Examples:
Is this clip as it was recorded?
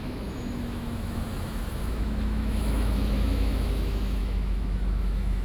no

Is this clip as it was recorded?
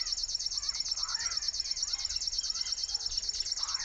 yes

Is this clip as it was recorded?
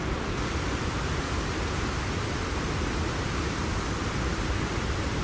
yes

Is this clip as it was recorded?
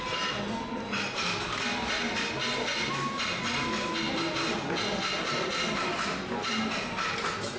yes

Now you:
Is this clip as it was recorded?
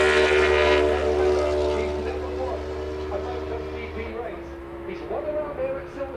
yes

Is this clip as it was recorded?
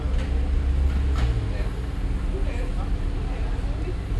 yes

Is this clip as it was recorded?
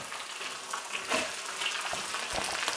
yes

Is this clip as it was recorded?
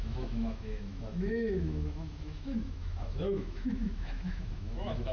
no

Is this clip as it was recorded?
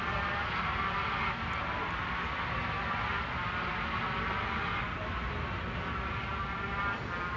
yes